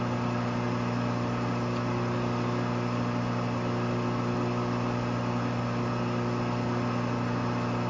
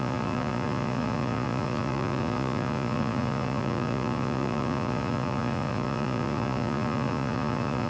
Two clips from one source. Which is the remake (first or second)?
second